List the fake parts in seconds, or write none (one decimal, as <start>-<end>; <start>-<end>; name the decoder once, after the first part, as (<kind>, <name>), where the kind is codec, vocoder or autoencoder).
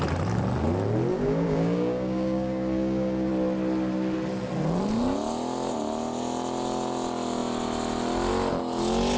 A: 1.1-3.3 (codec, DAC)